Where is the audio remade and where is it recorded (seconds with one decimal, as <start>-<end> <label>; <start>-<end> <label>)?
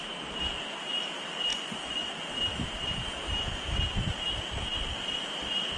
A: 0.0-1.5 recorded; 1.5-2.1 remade; 2.1-5.8 recorded